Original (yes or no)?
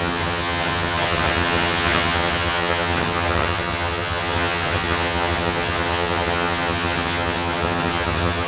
no